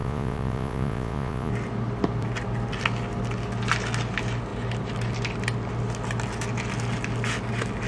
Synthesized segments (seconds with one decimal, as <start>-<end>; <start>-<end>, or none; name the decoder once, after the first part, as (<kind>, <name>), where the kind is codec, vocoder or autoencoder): 0.0-1.5 (vocoder, Vocos)